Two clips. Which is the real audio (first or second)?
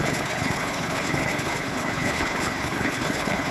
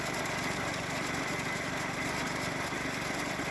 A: second